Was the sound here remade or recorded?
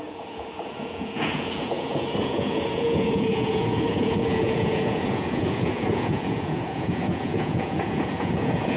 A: remade